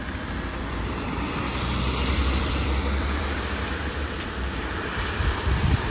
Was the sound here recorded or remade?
remade